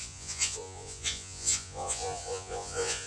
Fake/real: fake